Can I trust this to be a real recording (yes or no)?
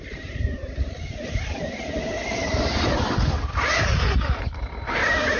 yes